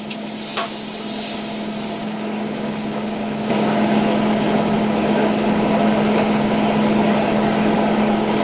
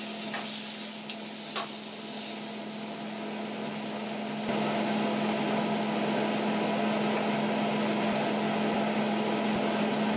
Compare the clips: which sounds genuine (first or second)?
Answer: second